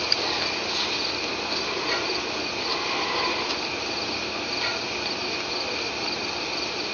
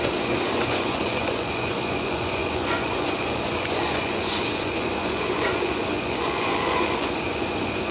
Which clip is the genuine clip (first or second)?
first